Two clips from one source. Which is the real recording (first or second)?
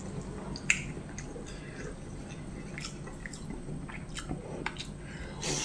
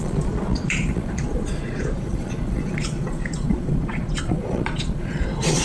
first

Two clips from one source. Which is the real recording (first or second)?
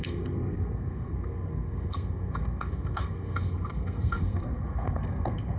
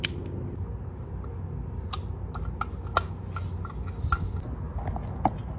second